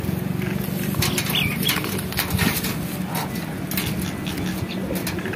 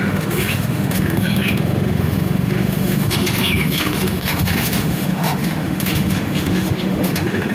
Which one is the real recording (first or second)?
first